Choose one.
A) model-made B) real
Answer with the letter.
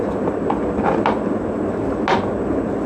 B